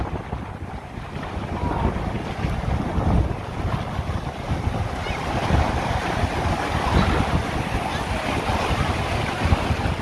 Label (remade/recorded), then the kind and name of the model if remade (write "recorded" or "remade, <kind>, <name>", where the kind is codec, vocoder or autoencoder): recorded